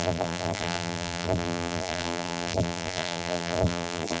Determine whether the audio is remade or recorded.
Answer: remade